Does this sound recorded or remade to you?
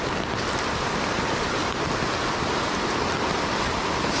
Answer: recorded